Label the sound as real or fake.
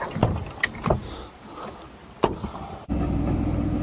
real